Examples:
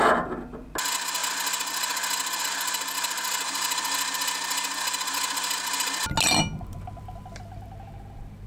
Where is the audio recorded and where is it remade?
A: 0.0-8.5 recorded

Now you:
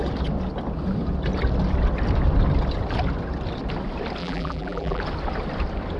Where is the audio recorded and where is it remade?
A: 0.0-4.2 recorded; 4.2-5.0 remade; 5.0-6.0 recorded

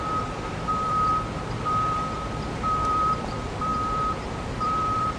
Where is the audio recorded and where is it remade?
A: 0.0-1.1 remade; 1.1-1.6 recorded; 1.6-5.2 remade